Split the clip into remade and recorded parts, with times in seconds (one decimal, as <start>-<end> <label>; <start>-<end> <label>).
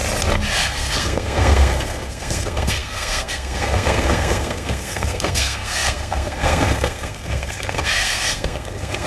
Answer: 0.0-0.6 recorded; 0.6-9.1 remade